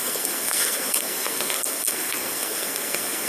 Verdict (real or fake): fake